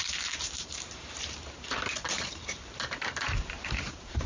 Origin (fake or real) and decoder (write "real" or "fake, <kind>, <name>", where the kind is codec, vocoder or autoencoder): fake, vocoder, BigVGAN v2